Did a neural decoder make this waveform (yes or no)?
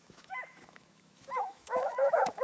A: yes